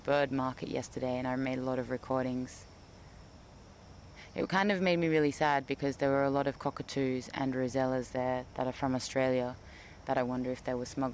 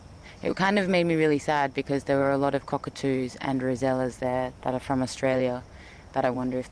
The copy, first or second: second